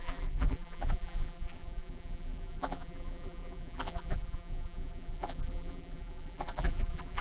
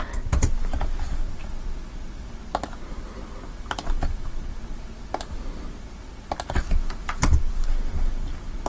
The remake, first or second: first